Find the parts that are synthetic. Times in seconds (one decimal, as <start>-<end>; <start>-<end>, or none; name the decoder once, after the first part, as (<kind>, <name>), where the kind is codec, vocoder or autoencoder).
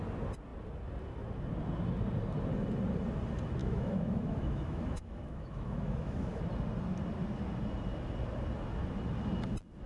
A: 3.6-6.4 (autoencoder, DAC-VAE)